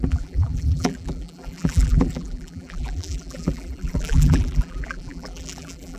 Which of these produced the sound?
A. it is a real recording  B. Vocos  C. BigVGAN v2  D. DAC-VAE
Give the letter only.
C